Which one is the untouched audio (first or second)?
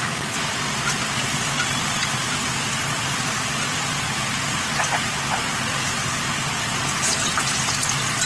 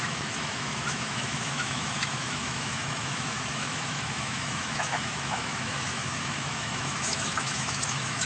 first